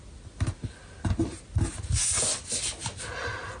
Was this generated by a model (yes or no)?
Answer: no